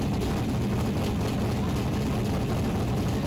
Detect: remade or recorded recorded